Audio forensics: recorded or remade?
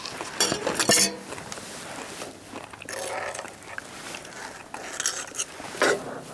recorded